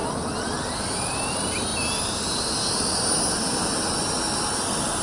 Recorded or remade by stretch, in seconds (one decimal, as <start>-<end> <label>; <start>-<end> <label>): 0.0-0.7 recorded; 0.7-1.7 remade; 1.7-5.0 recorded